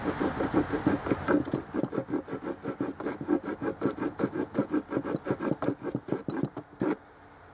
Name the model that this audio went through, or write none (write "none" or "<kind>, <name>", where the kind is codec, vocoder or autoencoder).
none